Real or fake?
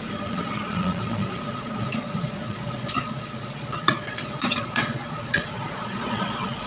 fake